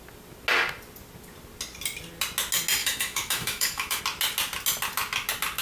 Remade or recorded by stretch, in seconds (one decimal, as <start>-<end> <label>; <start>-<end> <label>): 0.0-2.8 recorded; 2.8-4.0 remade; 4.0-5.6 recorded